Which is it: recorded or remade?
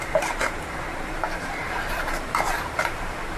remade